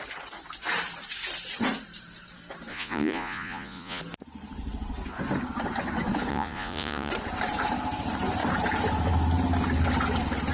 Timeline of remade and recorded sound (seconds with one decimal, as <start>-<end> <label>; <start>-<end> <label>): 0.0-2.7 recorded; 2.7-4.0 remade; 4.0-6.3 recorded; 6.3-7.1 remade; 7.1-10.5 recorded